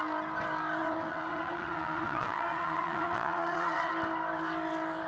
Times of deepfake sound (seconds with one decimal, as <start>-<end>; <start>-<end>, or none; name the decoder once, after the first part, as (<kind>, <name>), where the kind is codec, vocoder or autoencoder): 0.8-3.9 (vocoder, WaveNeXt)